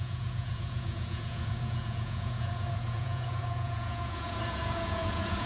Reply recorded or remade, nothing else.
remade